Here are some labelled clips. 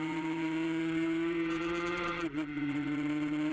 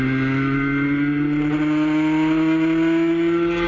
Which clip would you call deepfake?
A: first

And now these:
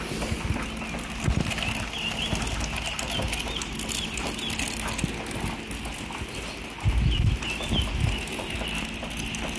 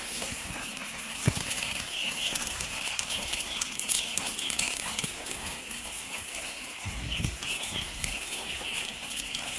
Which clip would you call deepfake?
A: second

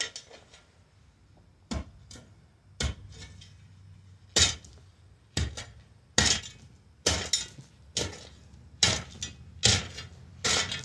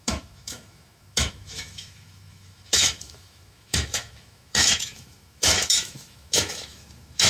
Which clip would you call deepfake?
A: second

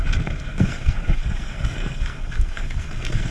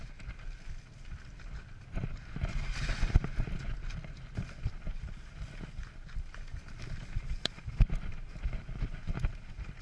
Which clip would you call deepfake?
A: first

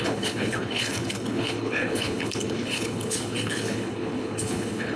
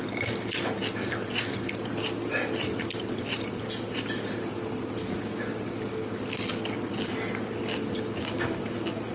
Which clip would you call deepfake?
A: first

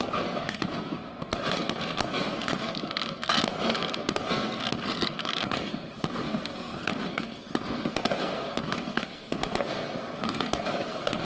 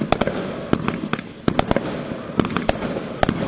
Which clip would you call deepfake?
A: first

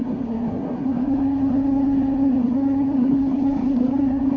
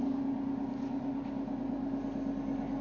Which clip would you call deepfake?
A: first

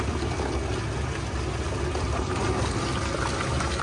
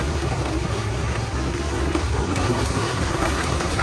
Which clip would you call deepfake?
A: second